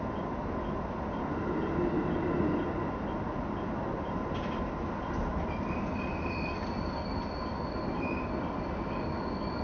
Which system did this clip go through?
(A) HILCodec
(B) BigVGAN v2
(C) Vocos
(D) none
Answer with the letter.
D